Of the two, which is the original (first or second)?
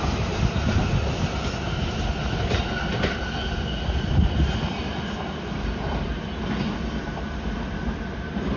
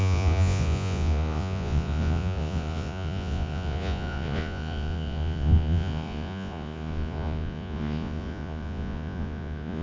first